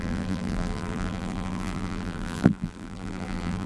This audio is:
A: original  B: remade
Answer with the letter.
B